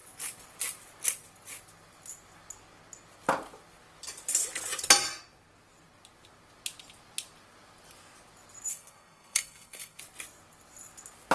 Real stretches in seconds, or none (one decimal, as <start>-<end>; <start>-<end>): 0.0-8.7; 10.0-11.3